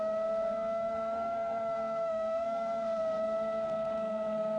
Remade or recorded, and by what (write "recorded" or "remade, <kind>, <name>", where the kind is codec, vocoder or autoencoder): remade, codec, SNAC